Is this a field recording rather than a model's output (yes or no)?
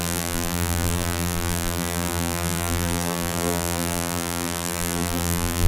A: no